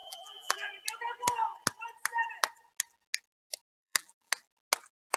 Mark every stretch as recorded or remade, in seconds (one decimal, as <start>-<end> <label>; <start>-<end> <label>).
0.0-0.7 remade; 0.7-3.8 recorded; 3.8-4.3 remade; 4.3-5.2 recorded